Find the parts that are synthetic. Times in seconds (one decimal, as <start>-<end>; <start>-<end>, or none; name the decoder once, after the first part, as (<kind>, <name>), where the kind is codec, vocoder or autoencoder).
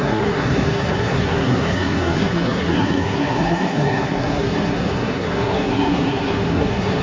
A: 0.0-7.0 (codec, SNAC)